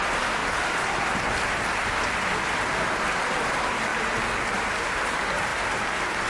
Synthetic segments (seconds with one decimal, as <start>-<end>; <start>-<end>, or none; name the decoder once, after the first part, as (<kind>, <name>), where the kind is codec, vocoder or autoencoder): none